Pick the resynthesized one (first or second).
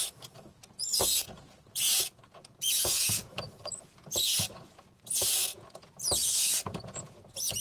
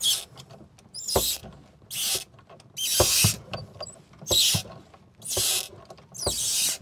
first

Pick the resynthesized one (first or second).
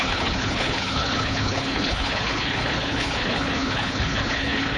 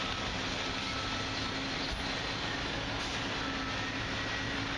first